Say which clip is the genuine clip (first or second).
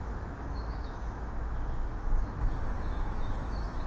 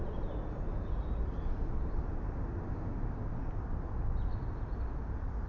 second